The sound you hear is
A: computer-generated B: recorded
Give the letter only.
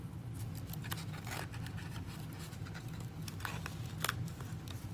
B